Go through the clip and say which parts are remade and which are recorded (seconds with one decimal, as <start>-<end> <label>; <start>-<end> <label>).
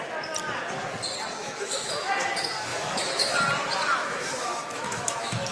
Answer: 0.0-1.4 recorded; 1.4-2.1 remade; 2.1-2.7 recorded; 2.7-3.4 remade; 3.4-4.0 recorded; 4.0-5.5 remade